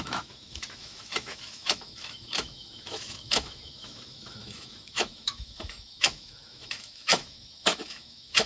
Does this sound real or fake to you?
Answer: fake